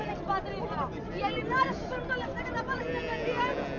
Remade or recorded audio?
recorded